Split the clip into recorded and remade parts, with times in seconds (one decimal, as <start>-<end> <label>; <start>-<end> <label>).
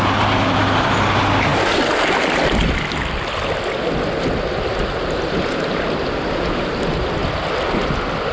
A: 0.0-8.3 recorded